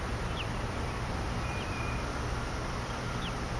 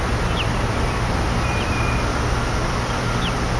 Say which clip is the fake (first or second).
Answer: first